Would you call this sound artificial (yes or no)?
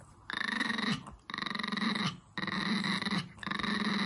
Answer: no